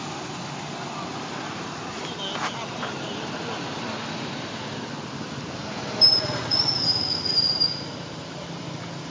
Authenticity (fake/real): real